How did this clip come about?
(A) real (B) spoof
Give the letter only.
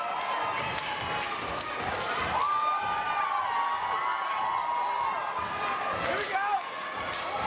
A